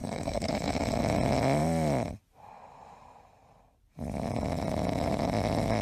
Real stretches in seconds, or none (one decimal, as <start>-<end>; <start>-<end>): 0.5-5.8

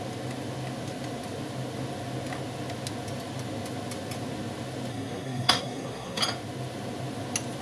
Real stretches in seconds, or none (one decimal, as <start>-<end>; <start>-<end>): 0.0-4.9; 6.2-7.6

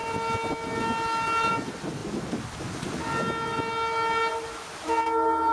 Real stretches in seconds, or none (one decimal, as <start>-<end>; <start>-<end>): 0.0-5.5

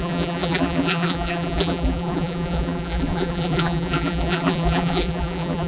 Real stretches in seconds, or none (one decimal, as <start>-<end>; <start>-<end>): none

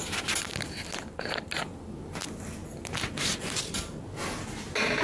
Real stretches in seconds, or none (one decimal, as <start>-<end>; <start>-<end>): 0.0-5.0

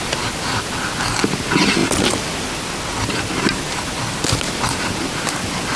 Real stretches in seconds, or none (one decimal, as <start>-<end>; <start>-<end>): 0.0-5.8

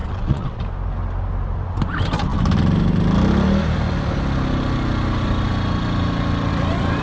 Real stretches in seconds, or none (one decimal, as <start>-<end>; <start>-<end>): 0.6-7.0